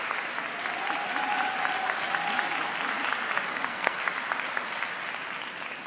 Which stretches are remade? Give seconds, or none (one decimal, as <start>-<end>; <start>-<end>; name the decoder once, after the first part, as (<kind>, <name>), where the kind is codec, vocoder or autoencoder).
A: 3.5-4.0 (codec, SNAC)